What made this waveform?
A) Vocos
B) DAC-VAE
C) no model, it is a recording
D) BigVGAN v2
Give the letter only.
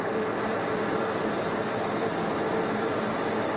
D